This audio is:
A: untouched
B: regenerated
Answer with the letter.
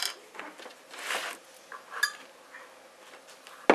A